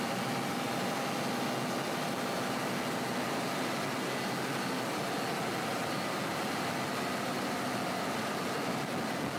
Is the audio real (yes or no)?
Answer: yes